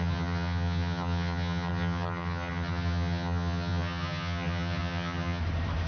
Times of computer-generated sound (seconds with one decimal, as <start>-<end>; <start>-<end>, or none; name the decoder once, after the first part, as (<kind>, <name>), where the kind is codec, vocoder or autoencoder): 0.0-5.4 (vocoder, HiFi-GAN)